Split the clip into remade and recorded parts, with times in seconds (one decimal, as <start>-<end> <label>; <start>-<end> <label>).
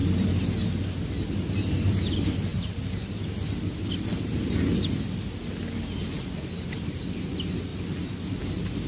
0.0-1.3 recorded; 1.3-7.7 remade; 7.7-8.4 recorded; 8.4-8.9 remade